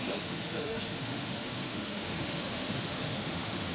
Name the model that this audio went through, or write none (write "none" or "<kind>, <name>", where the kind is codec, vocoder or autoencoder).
autoencoder, DAC-VAE